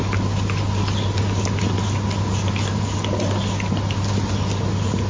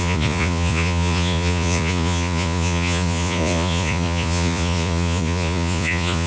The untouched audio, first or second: first